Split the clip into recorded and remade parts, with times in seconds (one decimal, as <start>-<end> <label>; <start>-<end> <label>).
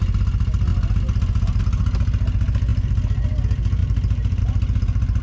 0.0-3.8 recorded; 3.8-4.4 remade; 4.4-5.2 recorded